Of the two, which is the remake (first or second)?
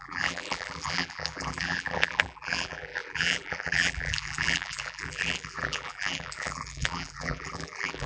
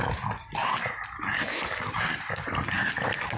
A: first